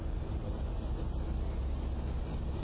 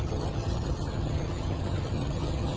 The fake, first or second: second